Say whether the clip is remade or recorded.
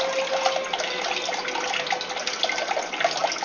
recorded